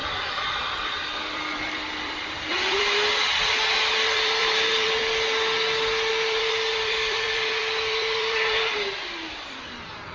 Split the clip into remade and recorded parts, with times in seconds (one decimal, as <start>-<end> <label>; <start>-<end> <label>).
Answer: 0.0-3.3 remade; 3.3-3.9 recorded; 3.9-5.1 remade; 5.1-6.1 recorded; 6.1-10.1 remade